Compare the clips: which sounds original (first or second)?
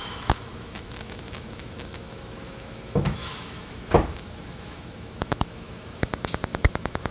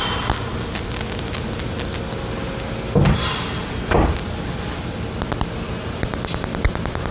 second